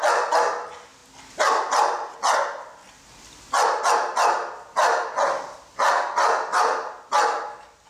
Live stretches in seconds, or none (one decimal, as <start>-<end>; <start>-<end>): 0.0-7.9